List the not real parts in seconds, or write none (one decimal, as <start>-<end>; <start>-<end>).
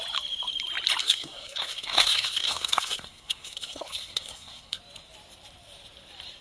1.0-4.8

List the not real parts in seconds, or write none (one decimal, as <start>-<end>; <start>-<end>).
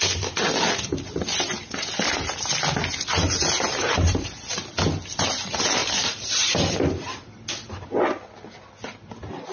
2.8-4.3; 5.8-7.3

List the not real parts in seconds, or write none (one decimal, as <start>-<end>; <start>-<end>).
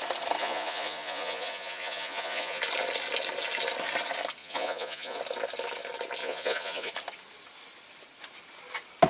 0.4-2.6; 4.4-5.2; 6.2-6.9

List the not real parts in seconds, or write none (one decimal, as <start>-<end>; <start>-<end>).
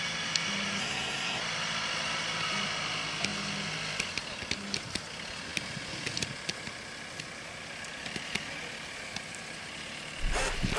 0.8-1.4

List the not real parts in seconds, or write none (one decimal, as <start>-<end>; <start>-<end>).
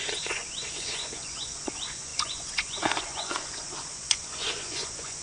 0.0-5.2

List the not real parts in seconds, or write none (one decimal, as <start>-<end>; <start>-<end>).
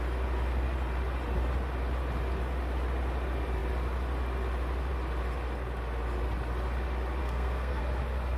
7.2-7.8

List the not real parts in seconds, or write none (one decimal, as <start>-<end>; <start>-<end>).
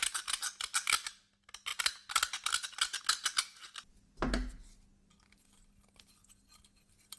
none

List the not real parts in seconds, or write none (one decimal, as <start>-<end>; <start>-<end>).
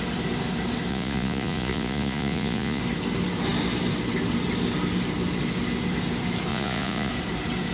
0.9-2.8; 6.5-7.1